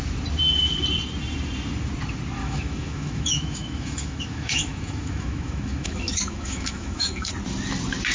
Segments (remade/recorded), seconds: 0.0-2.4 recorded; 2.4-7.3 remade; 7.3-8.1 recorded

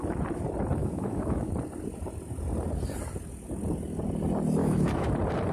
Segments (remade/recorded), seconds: 0.0-0.8 recorded; 0.8-1.5 remade; 1.5-4.6 recorded; 4.6-5.1 remade; 5.1-5.5 recorded

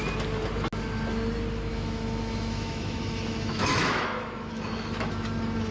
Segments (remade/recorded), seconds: 0.0-1.7 recorded; 1.7-5.1 remade; 5.1-5.7 recorded

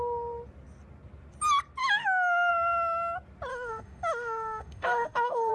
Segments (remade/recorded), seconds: 0.0-1.8 recorded; 1.8-2.5 remade; 2.5-3.5 recorded; 3.5-5.5 remade

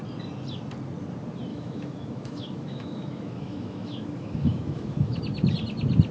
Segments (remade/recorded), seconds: 0.0-1.5 recorded; 1.5-5.2 remade; 5.2-6.1 recorded

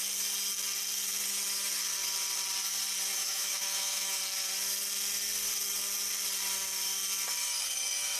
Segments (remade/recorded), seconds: 0.0-3.1 recorded; 3.1-4.2 remade; 4.2-8.2 recorded